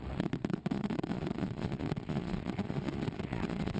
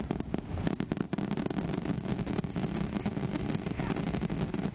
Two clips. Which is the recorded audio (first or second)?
second